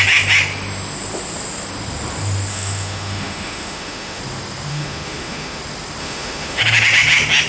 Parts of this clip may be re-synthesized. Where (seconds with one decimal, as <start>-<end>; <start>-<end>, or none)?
2.5-4.2; 4.7-5.6; 6.0-6.6